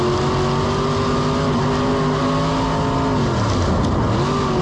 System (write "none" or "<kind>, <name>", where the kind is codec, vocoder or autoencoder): none